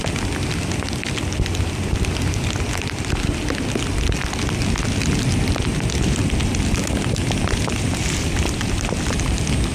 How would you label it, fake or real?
real